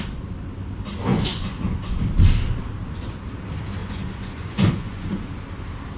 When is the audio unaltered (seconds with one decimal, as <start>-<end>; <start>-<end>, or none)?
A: 0.0-1.1; 2.0-3.8; 5.3-6.0